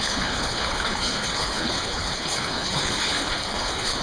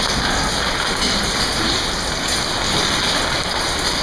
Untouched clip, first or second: second